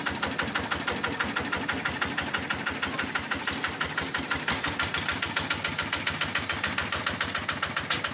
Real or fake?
real